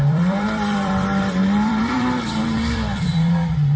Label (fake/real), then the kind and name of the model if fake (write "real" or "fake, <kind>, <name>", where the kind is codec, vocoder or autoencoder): fake, vocoder, BigVGAN v2